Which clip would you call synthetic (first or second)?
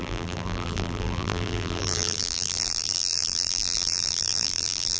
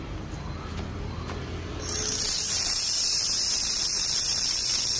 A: first